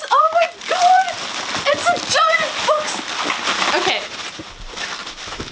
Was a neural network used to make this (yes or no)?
yes